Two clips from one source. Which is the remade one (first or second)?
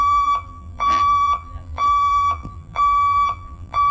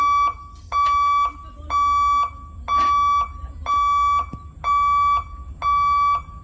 first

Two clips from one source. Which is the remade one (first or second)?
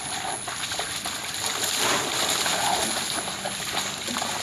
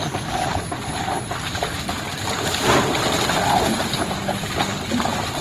second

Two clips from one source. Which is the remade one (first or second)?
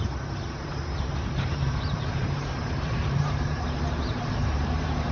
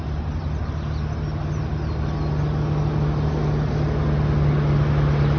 first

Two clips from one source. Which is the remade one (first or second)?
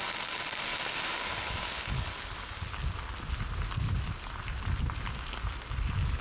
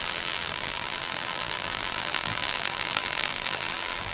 second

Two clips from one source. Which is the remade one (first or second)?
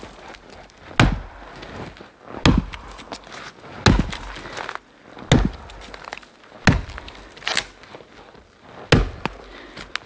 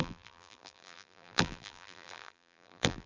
second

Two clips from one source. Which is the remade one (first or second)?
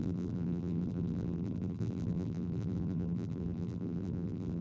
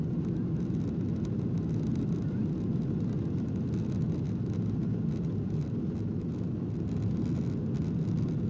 first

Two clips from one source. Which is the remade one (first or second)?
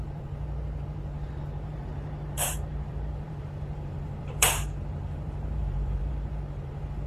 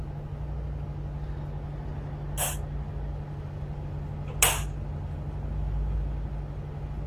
first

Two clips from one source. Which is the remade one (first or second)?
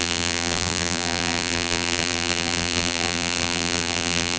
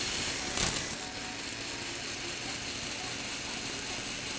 first